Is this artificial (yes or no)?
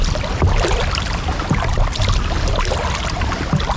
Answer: no